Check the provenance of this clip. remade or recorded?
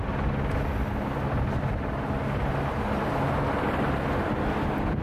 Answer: recorded